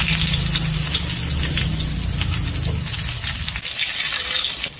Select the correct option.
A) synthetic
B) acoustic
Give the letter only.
B